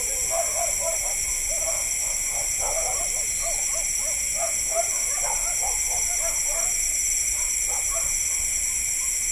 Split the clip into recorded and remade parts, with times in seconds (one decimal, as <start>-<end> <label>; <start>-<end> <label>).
0.0-9.3 recorded